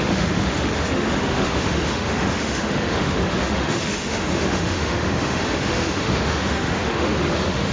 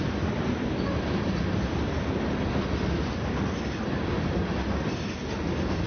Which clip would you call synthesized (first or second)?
first